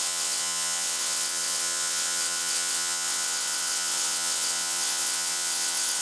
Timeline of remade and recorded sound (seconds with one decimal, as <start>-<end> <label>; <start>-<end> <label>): 0.0-6.0 remade